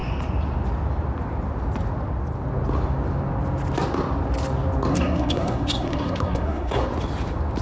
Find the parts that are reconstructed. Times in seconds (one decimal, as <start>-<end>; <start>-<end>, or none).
4.9-6.9